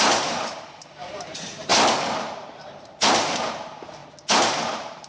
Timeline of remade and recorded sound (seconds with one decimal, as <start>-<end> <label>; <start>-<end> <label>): 0.0-1.7 remade; 1.7-2.2 recorded; 2.2-5.1 remade